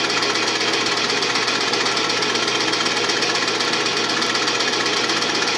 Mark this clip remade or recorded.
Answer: recorded